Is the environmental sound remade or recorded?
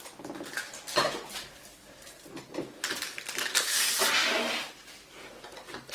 recorded